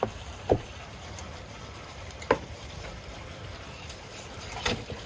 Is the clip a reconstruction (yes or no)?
yes